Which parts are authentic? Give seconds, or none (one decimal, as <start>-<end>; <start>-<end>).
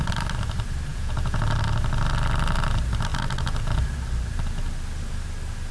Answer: 0.0-0.9; 1.4-5.7